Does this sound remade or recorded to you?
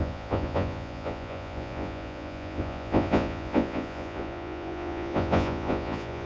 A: remade